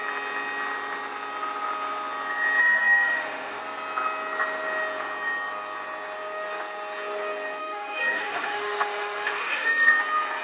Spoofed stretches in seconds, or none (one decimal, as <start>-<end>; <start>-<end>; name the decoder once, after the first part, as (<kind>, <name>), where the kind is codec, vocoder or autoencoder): 2.6-3.6 (autoencoder, DAC-VAE); 7.6-10.0